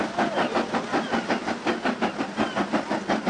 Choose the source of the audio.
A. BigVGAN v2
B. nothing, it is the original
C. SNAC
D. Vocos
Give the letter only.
B